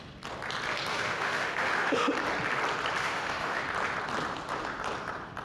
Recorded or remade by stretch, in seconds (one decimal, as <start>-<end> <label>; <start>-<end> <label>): 0.0-0.9 recorded; 0.9-2.1 remade; 2.1-3.0 recorded; 3.0-3.6 remade; 3.6-5.4 recorded